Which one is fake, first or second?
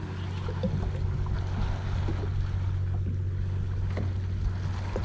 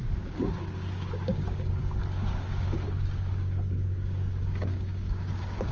second